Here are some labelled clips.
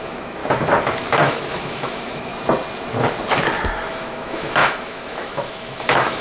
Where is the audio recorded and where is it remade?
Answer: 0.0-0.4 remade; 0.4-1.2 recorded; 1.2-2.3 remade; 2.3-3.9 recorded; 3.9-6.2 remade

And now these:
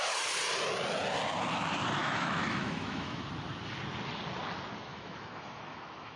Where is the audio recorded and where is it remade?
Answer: 0.0-2.0 recorded; 2.0-3.3 remade; 3.3-4.9 recorded; 4.9-6.2 remade

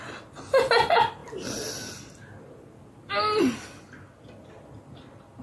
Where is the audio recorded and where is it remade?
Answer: 0.0-5.4 recorded

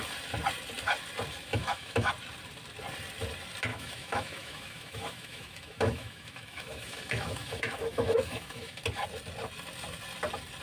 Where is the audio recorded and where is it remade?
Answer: 0.0-1.5 recorded; 1.5-2.1 remade; 2.1-3.7 recorded; 3.7-8.8 remade; 8.8-10.6 recorded

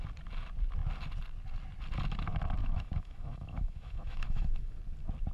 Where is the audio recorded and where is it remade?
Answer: 0.0-2.6 recorded; 2.6-4.8 remade; 4.8-5.3 recorded